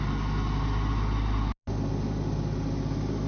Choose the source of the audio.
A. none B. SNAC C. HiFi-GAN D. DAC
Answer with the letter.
A